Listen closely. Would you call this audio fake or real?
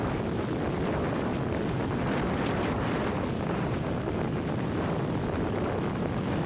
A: real